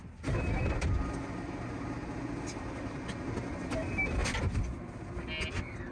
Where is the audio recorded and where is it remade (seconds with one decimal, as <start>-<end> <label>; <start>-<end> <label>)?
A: 0.0-5.9 recorded